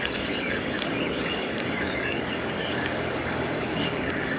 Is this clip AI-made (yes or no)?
yes